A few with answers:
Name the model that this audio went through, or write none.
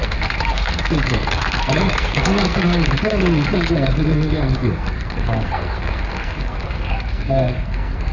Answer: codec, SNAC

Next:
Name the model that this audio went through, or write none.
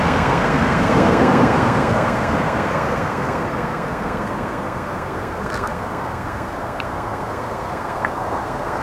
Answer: codec, SNAC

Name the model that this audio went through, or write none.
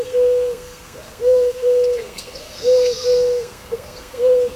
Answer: codec, SNAC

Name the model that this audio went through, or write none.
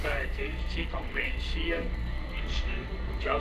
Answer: codec, SNAC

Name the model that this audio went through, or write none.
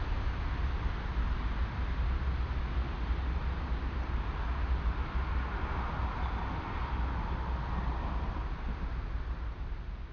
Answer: none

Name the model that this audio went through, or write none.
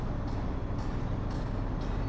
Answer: none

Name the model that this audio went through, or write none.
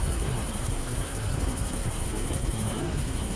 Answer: codec, SNAC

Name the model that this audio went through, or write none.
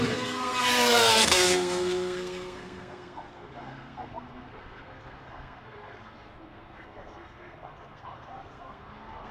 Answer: codec, SNAC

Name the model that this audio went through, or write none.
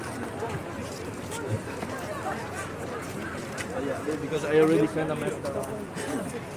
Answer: none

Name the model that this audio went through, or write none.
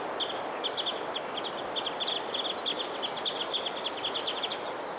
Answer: none